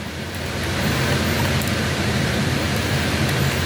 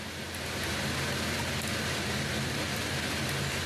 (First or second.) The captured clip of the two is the second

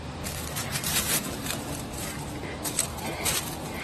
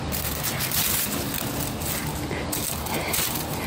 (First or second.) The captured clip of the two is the second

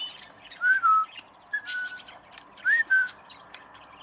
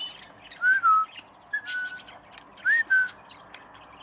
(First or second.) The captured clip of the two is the second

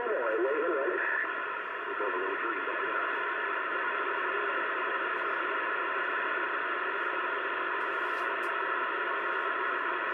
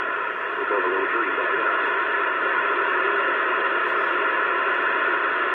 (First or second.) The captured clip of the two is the second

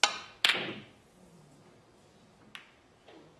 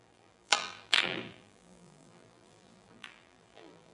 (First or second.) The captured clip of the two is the first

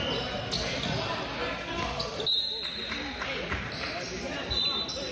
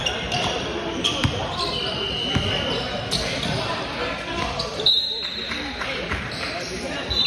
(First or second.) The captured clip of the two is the first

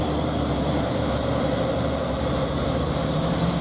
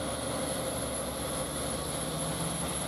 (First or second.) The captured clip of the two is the second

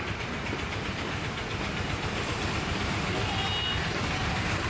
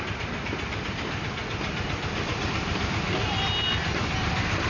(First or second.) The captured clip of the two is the second